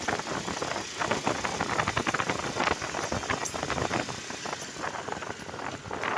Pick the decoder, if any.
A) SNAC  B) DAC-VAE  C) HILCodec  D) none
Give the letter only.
D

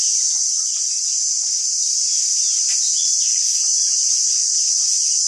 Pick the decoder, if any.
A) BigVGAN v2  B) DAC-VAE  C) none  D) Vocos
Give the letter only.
C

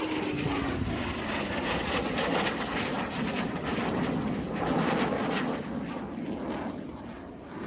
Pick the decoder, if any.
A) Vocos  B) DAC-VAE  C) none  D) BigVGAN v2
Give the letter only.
C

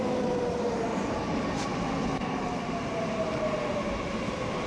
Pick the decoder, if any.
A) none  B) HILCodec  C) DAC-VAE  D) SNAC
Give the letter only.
A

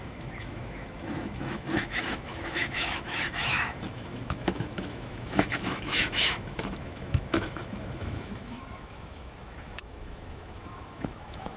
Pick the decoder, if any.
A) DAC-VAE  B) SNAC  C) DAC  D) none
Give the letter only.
A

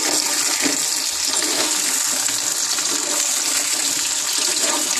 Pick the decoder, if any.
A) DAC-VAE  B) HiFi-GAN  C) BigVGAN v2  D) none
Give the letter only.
D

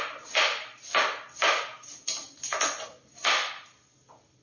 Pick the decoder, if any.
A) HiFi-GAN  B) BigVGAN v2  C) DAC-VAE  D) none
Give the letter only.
D